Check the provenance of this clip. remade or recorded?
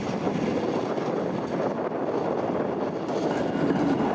recorded